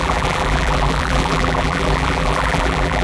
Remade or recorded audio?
remade